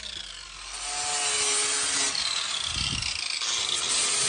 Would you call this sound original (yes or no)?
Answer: yes